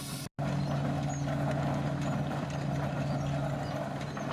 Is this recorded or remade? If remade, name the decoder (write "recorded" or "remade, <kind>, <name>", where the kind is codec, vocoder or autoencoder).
recorded